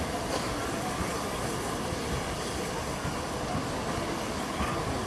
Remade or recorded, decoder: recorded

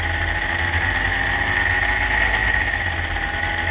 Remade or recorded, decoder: recorded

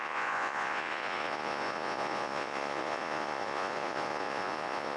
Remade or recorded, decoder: remade, vocoder, Vocos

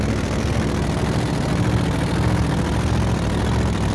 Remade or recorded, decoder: recorded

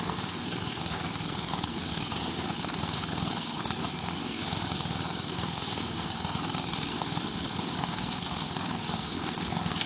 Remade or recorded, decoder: remade, codec, SNAC